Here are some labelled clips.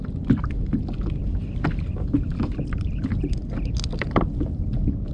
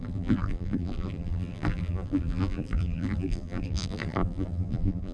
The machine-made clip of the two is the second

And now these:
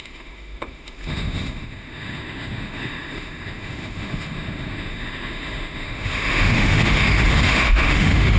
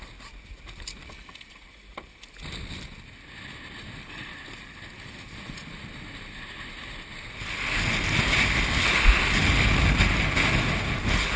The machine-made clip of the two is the first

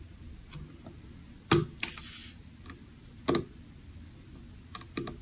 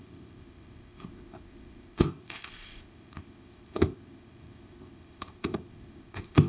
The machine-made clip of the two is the second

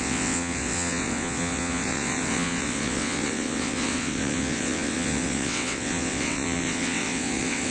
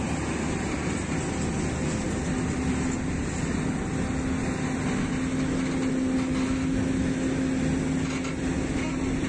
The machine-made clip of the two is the first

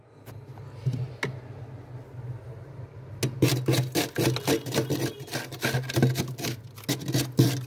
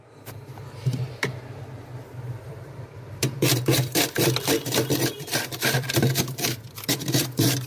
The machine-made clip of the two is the second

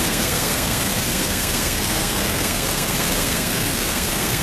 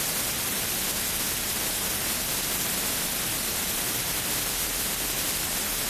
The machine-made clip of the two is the first